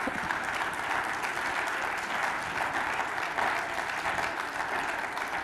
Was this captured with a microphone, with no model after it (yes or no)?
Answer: yes